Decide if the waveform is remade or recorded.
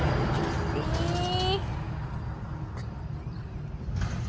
recorded